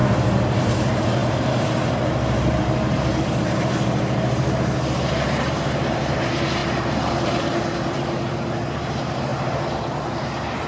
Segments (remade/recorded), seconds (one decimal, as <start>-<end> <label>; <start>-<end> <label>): 0.0-9.3 remade; 9.3-10.7 recorded